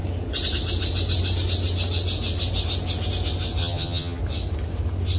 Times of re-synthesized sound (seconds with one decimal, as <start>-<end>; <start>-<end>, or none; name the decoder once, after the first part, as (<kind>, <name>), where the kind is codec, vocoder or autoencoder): 3.6-4.2 (vocoder, HiFi-GAN)